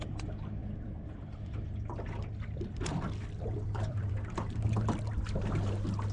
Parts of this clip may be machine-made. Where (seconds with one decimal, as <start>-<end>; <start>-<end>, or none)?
0.6-4.1